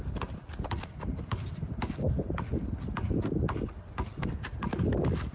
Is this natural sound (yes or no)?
yes